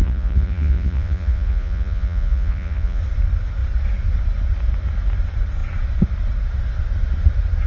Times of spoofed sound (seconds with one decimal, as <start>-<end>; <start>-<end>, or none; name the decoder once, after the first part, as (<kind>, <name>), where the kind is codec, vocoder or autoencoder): 0.0-3.0 (vocoder, Vocos)